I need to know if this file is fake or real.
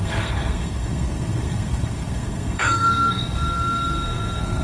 fake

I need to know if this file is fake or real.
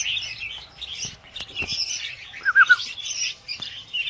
real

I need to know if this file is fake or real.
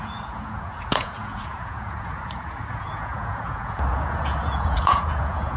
fake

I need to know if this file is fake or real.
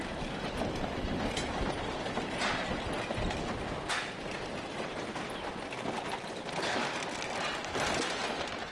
real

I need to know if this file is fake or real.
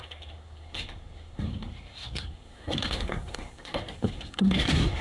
fake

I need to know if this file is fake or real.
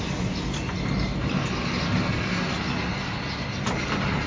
real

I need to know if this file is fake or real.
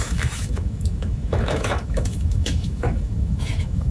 fake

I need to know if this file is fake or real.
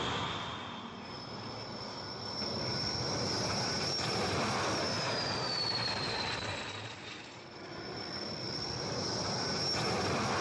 real